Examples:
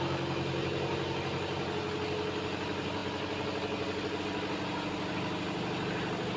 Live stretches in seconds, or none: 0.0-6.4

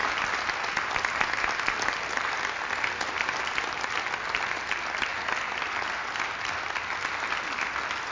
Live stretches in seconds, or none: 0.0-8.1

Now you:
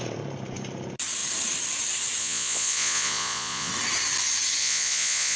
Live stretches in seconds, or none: 0.0-2.2; 3.7-4.6

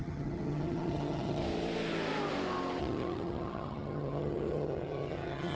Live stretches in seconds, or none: 1.4-2.8

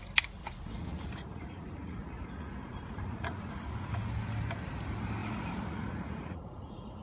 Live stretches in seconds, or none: 0.0-0.4; 4.0-5.2